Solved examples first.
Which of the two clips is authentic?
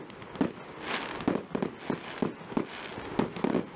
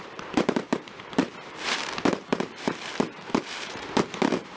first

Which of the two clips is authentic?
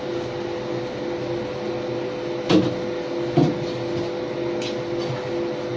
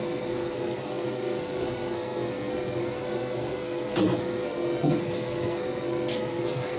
first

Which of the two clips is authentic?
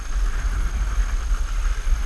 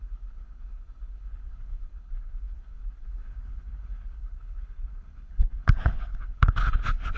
first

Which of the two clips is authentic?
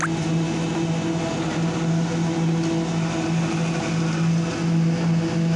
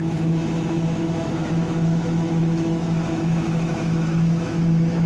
first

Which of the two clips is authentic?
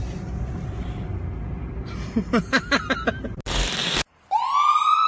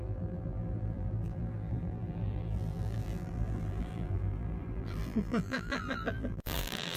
first